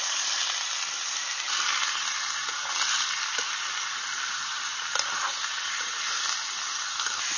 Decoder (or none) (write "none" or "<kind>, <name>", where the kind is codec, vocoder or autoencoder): none